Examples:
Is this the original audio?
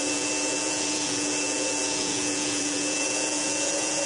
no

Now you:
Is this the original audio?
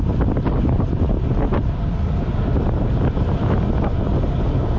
yes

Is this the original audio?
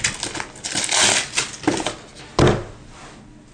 yes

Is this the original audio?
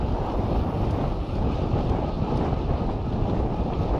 yes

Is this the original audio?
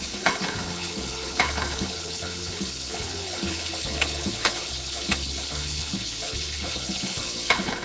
no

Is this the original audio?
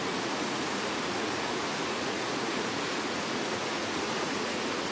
no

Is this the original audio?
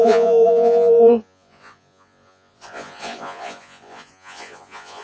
no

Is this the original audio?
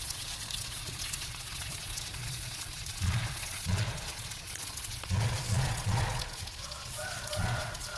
no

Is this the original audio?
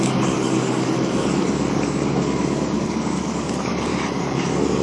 no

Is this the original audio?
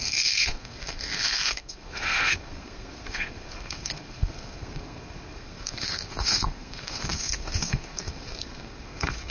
no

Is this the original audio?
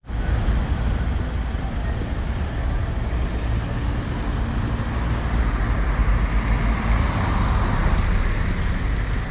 yes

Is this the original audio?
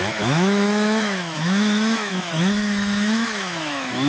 no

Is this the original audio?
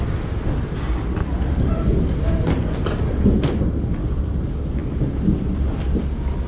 yes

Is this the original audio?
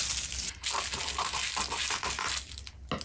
yes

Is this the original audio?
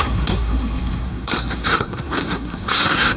no